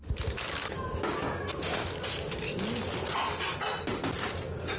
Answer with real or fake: real